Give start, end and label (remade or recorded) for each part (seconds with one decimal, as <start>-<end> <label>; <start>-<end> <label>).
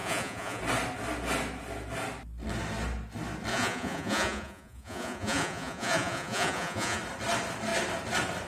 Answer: 0.0-0.6 remade; 0.6-3.5 recorded; 3.5-7.0 remade; 7.0-8.5 recorded